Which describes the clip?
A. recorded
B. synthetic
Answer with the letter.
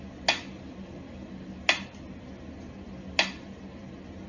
A